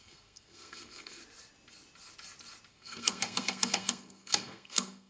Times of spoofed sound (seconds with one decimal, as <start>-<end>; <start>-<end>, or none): 0.0-1.2; 2.7-5.1